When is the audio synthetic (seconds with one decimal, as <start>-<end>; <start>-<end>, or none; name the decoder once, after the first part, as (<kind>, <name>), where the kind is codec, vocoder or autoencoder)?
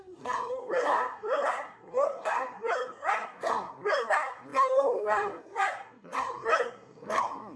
0.0-7.6 (codec, SNAC)